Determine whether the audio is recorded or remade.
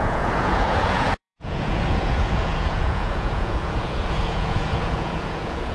remade